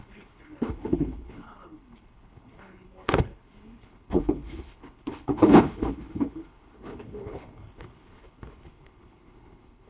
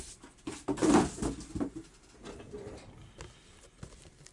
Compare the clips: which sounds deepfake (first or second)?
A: first